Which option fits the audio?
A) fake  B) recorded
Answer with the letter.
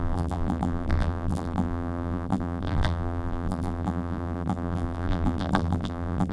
A